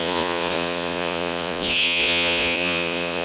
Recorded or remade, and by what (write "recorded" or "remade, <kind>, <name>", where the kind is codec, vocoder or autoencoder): remade, vocoder, Vocos